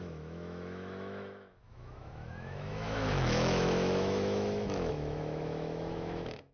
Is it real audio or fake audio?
fake